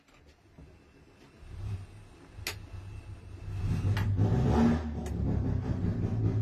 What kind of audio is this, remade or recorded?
recorded